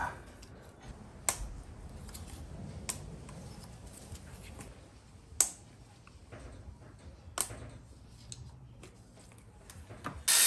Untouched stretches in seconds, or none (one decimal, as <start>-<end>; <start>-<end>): 0.0-10.5

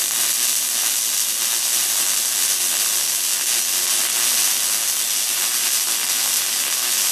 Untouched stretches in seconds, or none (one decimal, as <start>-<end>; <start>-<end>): 0.0-7.1

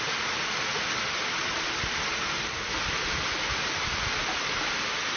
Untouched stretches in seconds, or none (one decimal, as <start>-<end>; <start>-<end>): 0.0-5.2